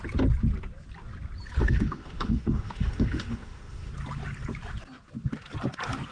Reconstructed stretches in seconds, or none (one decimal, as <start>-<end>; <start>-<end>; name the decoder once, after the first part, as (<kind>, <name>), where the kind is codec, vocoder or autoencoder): 1.6-3.9 (autoencoder, DAC-VAE)